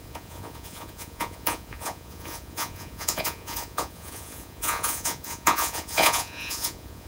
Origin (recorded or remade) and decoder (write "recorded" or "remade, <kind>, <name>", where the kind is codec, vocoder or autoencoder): remade, vocoder, Vocos